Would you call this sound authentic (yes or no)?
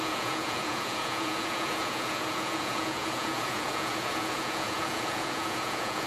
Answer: no